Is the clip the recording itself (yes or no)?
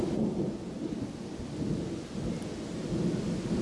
yes